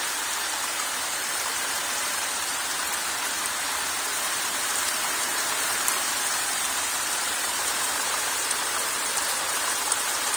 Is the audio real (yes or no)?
no